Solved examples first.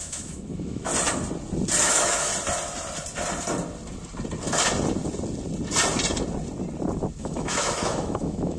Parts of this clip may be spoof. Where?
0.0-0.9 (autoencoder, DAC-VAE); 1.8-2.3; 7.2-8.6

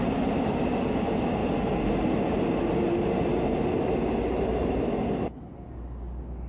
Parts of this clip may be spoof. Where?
none

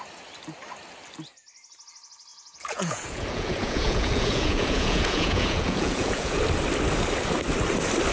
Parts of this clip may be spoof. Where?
2.3-6.4 (vocoder, Vocos)

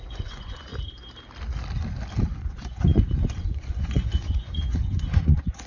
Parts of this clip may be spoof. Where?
0.0-0.7 (vocoder, Vocos); 2.3-5.7

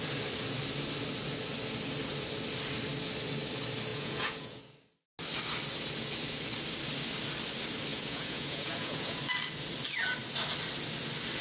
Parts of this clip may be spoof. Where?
3.9-4.6 (vocoder, Vocos); 7.9-9.2